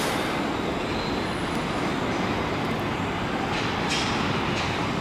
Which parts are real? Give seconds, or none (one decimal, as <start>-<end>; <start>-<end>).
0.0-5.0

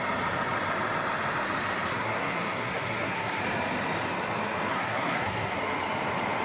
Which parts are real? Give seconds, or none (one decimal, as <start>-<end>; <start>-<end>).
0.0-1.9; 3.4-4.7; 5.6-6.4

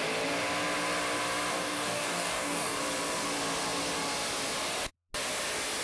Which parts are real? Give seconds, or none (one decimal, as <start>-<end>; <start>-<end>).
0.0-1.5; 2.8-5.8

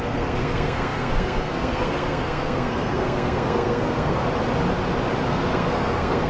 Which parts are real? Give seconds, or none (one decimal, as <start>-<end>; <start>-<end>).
4.2-5.3

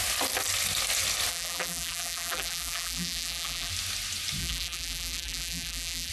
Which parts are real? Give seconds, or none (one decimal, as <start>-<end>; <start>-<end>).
0.0-1.3; 3.7-4.4

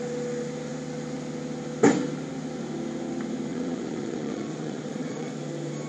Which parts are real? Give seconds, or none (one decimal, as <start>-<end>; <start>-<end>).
0.0-3.5; 5.3-5.9

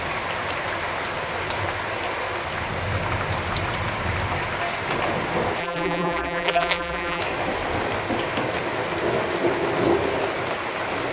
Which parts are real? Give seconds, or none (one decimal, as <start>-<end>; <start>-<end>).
0.0-5.6; 7.2-11.1